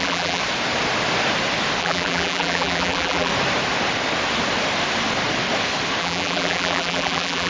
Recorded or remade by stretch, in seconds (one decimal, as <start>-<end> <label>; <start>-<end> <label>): 0.0-0.4 remade; 0.4-1.8 recorded; 1.8-3.3 remade; 3.3-6.0 recorded; 6.0-7.5 remade